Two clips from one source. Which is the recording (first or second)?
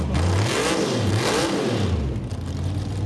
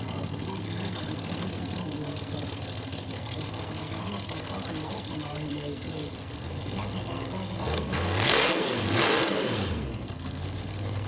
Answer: first